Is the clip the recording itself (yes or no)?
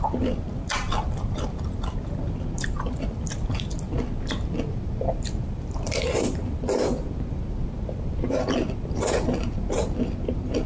no